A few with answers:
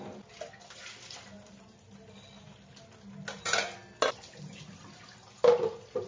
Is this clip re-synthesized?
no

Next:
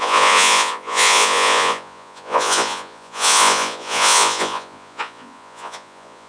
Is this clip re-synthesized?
yes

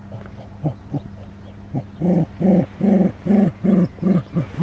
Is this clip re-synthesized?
no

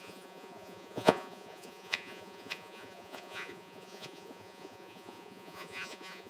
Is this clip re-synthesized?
yes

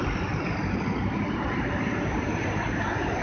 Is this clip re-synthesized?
no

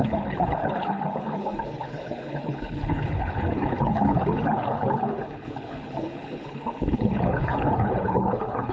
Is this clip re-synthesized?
yes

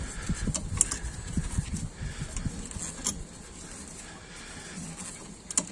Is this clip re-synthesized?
no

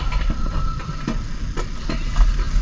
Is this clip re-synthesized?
no